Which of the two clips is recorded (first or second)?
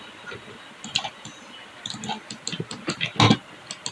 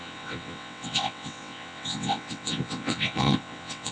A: first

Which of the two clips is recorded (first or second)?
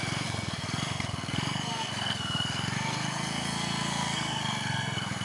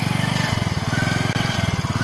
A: second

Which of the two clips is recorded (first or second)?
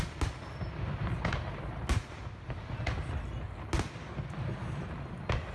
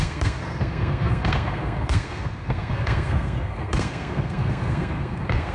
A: first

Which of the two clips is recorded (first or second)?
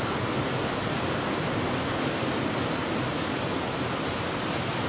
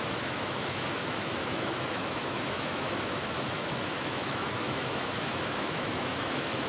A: first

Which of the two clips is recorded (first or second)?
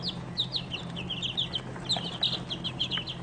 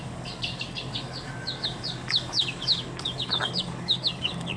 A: first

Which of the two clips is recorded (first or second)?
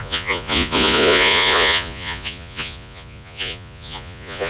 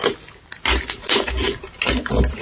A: second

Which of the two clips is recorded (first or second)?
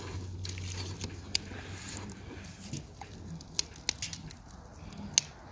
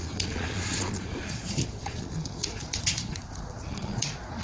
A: first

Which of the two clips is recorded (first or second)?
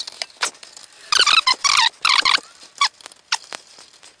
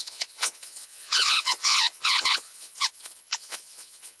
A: first